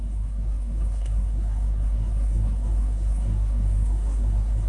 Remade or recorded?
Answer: remade